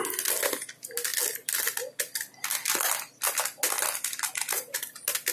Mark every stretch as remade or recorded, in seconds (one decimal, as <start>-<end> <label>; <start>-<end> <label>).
0.0-5.3 recorded